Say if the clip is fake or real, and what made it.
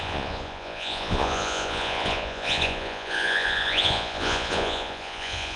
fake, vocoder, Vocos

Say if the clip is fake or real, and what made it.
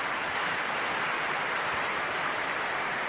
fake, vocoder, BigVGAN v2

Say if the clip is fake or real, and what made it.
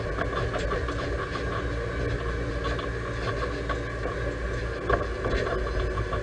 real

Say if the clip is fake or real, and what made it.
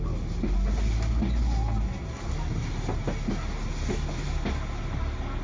real